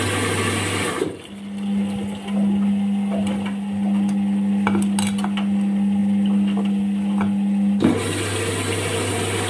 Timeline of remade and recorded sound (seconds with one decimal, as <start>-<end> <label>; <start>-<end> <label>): 0.0-9.5 recorded